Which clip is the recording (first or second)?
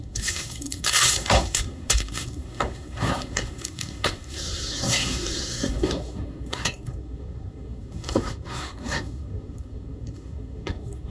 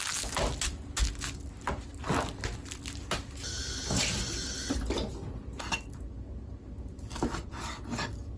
second